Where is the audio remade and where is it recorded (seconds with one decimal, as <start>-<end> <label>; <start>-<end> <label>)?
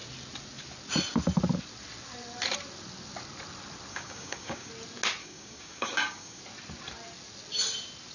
0.0-3.9 recorded; 3.9-4.7 remade; 4.7-5.2 recorded; 5.2-6.4 remade; 6.4-8.1 recorded